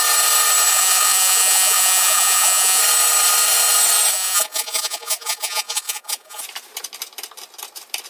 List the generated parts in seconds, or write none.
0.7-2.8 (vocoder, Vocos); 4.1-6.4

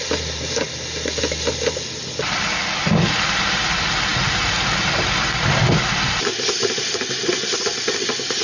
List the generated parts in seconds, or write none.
none

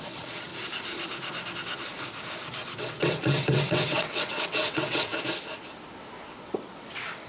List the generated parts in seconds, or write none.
0.0-0.5 (vocoder, WaveNeXt); 2.8-5.1; 6.4-7.3

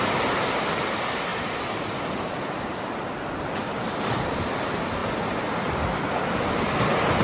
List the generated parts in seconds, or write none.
none

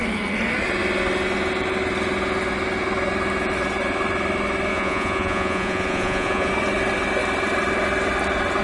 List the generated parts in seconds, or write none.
4.7-6.5 (vocoder, Vocos)

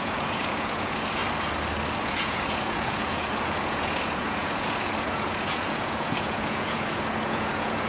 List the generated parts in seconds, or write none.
0.0-1.2 (vocoder, Vocos); 2.0-7.9